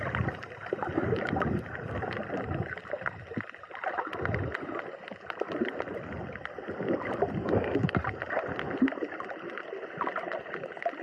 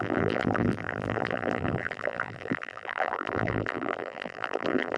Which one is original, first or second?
first